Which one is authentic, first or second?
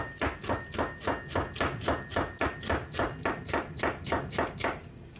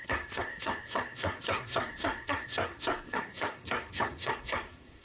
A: first